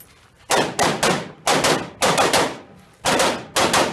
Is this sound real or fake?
real